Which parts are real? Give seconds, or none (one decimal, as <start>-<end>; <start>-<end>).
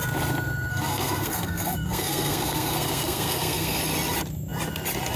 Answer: 0.0-0.7; 3.8-5.2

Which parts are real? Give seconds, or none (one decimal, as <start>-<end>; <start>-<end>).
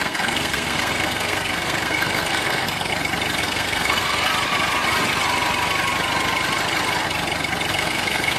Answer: 2.9-3.4; 4.3-7.7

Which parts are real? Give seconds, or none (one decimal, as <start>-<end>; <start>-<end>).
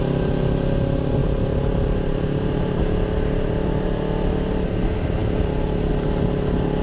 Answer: 0.0-1.2; 2.8-6.8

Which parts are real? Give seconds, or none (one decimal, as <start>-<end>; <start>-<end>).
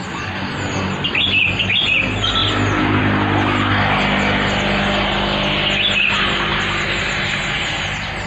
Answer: 0.0-8.3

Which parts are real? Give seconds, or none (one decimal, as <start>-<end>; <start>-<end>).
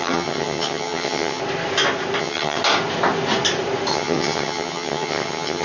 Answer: 1.4-2.2; 2.6-3.9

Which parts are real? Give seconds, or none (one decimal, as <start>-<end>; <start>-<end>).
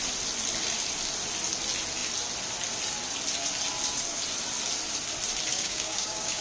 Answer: 0.0-5.5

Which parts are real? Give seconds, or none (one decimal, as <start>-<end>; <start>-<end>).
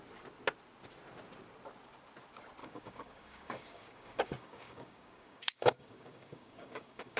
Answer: 0.0-2.6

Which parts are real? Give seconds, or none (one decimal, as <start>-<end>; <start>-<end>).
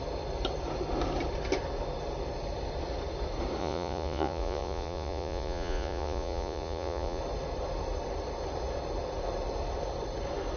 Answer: 0.0-3.6; 7.2-10.6